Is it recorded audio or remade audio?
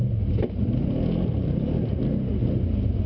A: recorded